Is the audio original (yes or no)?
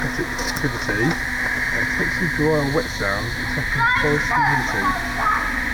yes